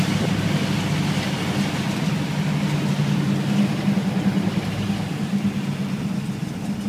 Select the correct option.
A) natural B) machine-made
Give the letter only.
A